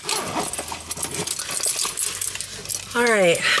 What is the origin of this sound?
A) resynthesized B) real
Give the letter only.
B